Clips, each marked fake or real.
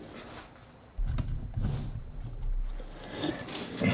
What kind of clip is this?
real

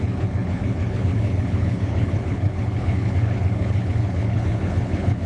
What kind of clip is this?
fake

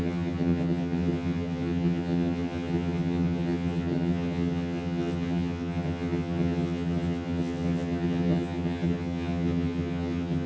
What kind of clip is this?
fake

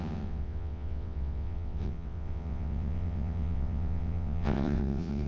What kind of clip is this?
fake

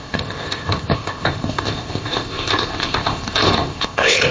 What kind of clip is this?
fake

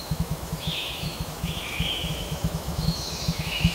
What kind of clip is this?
fake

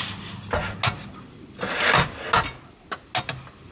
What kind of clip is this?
real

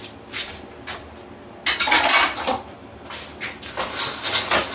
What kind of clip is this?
real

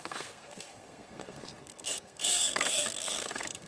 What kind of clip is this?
fake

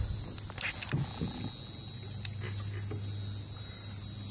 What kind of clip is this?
real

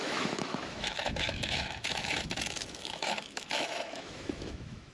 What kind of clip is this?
fake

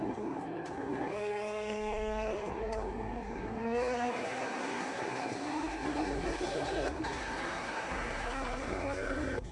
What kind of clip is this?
fake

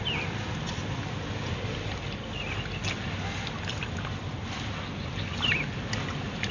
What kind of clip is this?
real